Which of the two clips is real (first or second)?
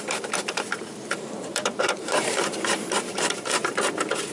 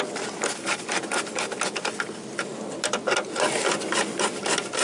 second